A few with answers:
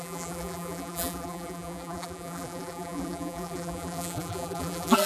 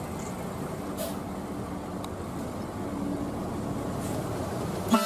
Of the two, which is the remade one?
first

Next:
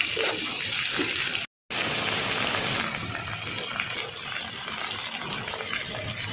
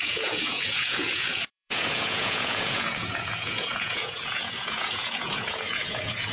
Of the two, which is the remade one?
second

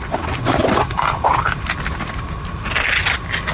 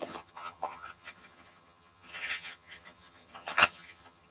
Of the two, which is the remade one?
second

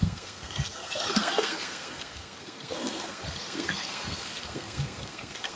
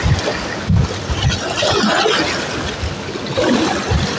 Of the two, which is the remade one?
first